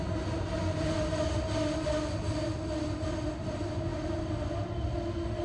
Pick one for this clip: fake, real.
real